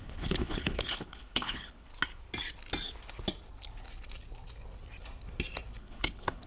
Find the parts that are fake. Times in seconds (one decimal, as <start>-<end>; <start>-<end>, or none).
0.0-1.9; 5.8-6.5